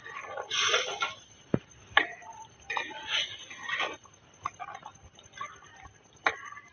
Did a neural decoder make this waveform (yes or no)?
no